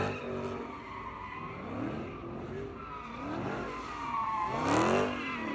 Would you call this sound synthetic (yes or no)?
no